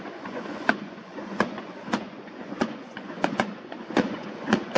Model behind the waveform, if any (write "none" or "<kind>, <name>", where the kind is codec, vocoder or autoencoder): vocoder, Vocos